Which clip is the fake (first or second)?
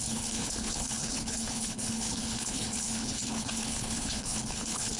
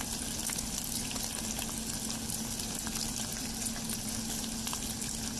first